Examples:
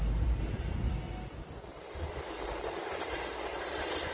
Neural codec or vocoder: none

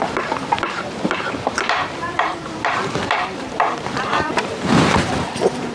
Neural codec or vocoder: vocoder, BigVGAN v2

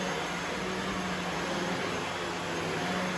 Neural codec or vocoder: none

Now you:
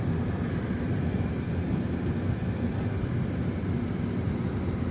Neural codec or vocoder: none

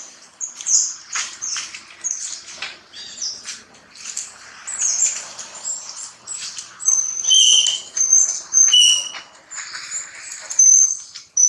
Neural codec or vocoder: none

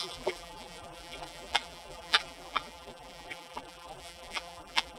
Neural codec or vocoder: vocoder, BigVGAN v2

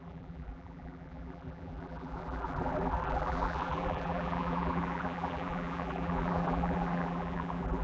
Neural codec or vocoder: vocoder, BigVGAN v2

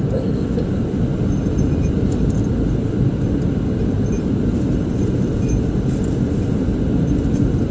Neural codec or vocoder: none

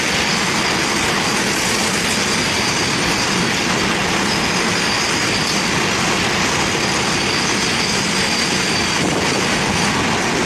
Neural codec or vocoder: none